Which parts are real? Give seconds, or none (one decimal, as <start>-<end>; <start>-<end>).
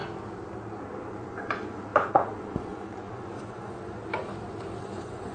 0.0-1.1; 4.0-4.8